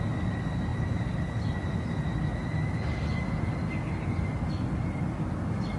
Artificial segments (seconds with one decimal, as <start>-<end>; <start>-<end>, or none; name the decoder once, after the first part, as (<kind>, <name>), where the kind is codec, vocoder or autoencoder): none